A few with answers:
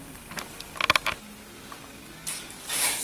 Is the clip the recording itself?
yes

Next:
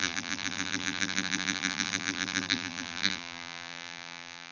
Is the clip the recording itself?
no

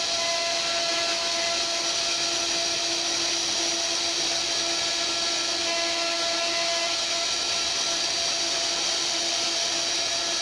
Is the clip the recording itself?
yes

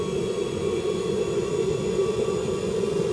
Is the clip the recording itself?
no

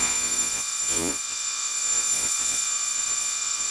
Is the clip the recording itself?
no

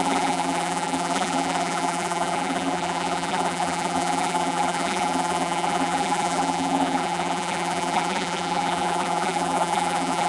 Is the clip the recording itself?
no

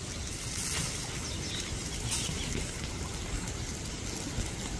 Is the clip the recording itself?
yes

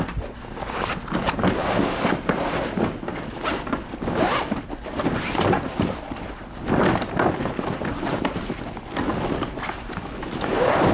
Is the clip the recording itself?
yes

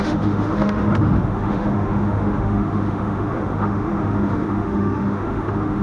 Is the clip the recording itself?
no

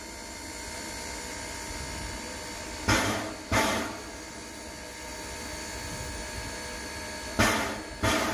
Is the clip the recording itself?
yes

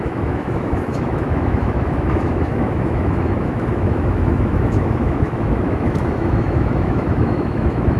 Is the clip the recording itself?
no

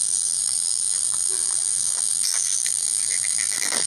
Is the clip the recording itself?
no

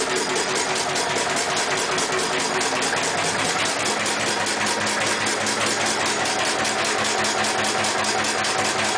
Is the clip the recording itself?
yes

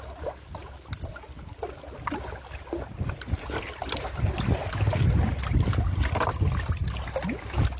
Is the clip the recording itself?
yes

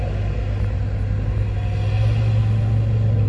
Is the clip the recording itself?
yes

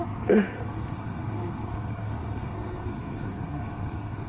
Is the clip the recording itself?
no